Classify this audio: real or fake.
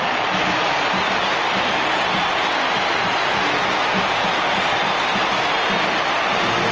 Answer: real